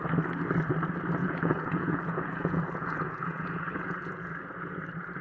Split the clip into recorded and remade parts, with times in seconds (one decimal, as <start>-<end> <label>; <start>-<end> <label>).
0.0-1.2 recorded; 1.2-4.3 remade; 4.3-5.2 recorded